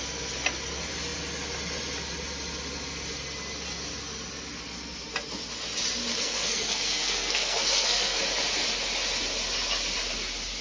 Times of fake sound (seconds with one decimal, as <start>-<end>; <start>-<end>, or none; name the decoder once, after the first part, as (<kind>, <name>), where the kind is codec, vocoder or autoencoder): 6.1-8.2 (codec, SNAC)

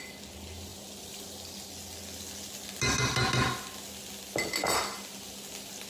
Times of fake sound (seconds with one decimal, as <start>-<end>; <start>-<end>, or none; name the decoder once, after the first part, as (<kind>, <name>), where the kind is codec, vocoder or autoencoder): none

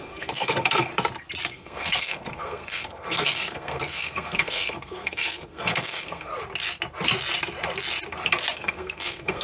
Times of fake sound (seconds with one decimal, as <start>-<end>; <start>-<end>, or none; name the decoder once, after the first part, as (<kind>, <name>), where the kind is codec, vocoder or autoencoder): 0.0-0.9 (codec, SNAC); 1.5-6.3; 8.5-9.4